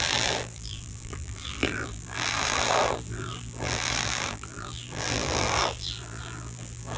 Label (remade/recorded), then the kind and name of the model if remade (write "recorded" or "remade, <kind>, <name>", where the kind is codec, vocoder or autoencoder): remade, vocoder, BigVGAN v2